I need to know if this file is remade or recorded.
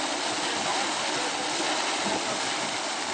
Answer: recorded